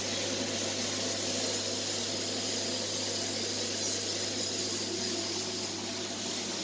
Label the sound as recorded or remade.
recorded